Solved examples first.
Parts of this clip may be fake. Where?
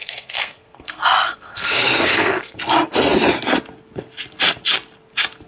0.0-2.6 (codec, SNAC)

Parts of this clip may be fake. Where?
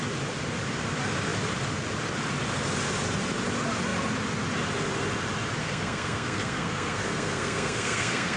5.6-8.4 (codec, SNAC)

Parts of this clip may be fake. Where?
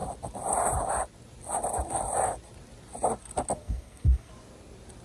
3.6-4.3 (codec, SNAC)